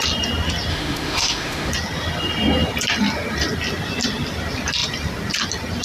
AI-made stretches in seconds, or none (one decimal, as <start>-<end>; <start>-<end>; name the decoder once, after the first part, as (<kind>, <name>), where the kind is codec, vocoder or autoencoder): 0.7-1.7 (autoencoder, DAC-VAE)